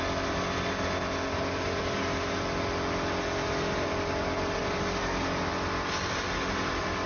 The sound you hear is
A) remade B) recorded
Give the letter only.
B